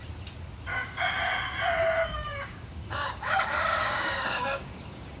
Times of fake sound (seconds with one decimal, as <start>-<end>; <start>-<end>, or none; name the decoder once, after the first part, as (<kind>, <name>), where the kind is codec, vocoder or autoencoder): 0.7-1.2 (codec, DAC); 2.0-5.2